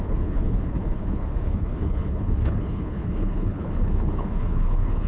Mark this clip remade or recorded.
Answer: remade